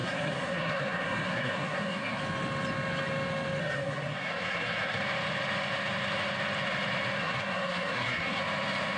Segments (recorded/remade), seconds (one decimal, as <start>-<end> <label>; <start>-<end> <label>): 0.0-2.2 remade; 2.2-3.6 recorded; 3.6-5.0 remade; 5.0-7.2 recorded; 7.2-8.4 remade; 8.4-9.0 recorded